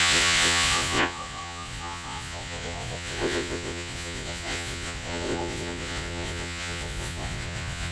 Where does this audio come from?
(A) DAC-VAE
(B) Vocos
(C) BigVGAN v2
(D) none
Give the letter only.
B